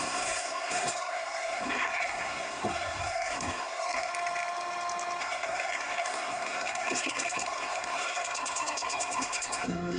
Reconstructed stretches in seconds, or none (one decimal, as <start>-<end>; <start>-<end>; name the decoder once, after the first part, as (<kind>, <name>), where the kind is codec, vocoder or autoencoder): 0.0-4.1 (codec, SNAC); 5.2-10.0